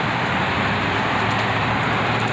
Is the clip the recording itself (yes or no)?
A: no